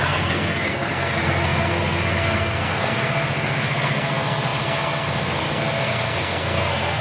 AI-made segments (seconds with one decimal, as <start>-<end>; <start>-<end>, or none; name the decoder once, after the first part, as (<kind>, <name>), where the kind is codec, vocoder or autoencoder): 0.0-7.0 (codec, SNAC)